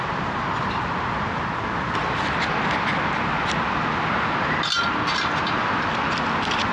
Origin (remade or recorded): recorded